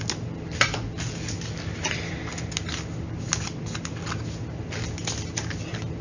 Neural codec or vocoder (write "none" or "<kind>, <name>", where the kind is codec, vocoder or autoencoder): none